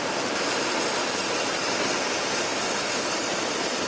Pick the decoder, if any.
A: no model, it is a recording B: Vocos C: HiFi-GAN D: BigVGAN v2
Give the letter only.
A